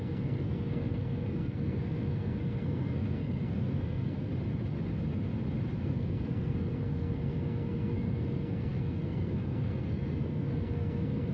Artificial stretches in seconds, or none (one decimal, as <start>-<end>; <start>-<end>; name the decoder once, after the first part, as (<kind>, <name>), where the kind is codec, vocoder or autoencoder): 0.0-4.3 (codec, SNAC); 5.8-11.3